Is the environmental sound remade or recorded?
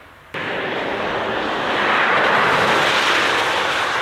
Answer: recorded